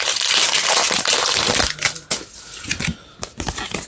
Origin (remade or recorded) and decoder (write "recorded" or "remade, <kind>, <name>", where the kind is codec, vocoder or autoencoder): recorded